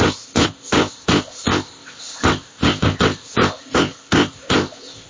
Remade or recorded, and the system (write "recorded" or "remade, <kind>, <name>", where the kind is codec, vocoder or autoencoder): remade, codec, ZipCodec